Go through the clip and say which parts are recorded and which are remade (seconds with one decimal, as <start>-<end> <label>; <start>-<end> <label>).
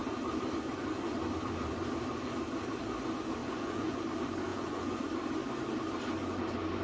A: 0.0-3.4 recorded; 3.4-4.0 remade; 4.0-4.5 recorded; 4.5-5.0 remade; 5.0-6.8 recorded